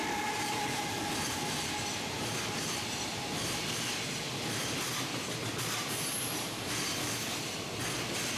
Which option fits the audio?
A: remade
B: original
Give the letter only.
B